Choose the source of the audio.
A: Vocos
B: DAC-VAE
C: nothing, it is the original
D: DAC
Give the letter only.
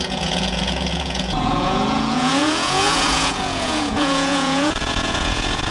A